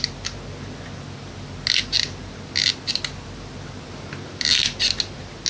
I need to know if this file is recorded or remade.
recorded